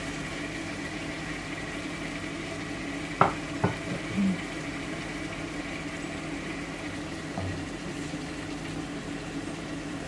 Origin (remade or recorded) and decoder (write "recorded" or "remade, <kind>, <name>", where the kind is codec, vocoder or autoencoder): remade, vocoder, BigVGAN v2